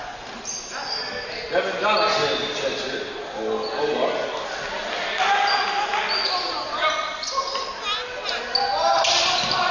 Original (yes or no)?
yes